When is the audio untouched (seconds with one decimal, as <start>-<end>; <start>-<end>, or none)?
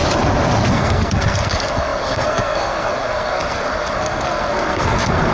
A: 0.0-0.7